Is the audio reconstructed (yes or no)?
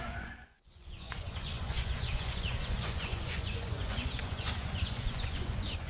yes